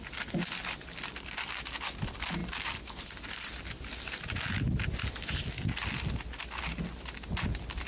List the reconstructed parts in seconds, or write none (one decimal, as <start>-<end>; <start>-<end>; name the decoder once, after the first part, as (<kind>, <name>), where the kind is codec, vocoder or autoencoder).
none